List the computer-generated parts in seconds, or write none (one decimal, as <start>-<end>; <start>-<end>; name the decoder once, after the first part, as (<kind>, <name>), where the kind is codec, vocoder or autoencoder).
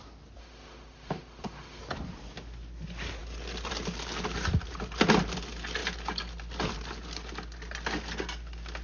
0.4-1.8 (autoencoder, DAC-VAE)